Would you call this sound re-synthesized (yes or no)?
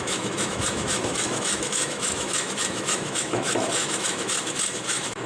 yes